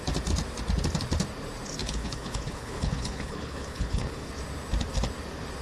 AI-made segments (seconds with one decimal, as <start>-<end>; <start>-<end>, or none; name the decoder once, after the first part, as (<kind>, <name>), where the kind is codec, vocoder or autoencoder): 1.8-4.3 (codec, HILCodec)